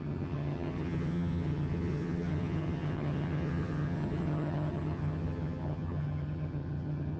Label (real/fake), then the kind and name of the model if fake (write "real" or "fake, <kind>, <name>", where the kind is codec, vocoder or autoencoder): fake, vocoder, HiFi-GAN